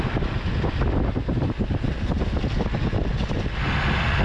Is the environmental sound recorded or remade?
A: recorded